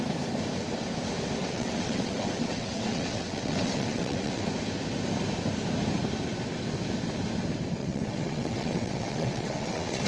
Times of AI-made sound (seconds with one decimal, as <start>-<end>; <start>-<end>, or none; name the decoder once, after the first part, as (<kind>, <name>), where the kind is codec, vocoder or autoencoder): 1.4-4.5 (vocoder, WaveNeXt); 7.8-10.1